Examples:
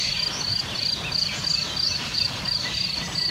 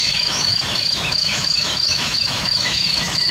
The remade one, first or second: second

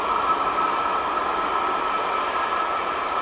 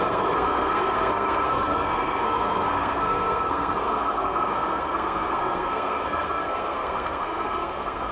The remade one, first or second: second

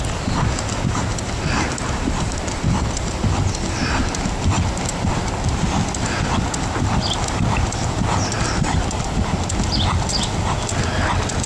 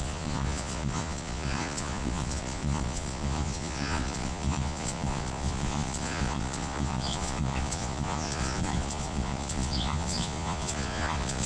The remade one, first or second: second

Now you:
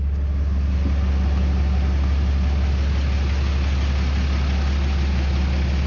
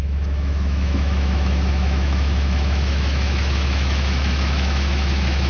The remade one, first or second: second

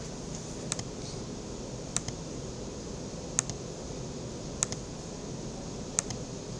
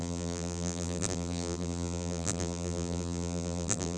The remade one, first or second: second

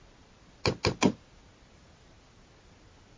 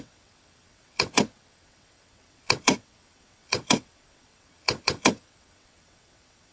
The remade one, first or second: second